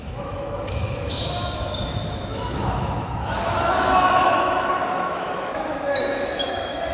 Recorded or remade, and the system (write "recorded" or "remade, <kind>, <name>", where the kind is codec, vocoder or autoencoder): remade, autoencoder, DAC-VAE